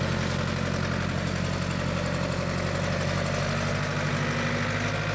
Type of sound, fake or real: real